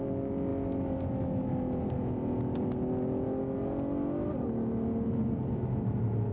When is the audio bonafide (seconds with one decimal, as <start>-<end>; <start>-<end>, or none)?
0.0-6.3